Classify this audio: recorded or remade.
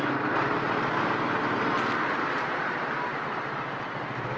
recorded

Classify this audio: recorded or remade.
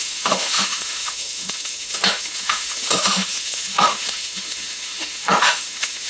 remade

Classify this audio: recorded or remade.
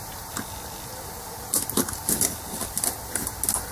recorded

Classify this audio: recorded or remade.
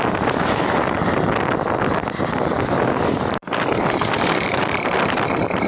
recorded